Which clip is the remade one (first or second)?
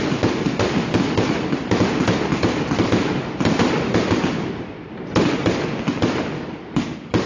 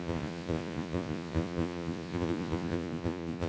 second